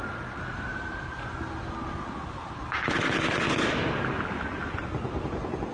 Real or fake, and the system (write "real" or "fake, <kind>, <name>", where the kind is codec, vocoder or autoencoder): real